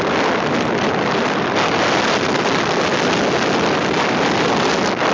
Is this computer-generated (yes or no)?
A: no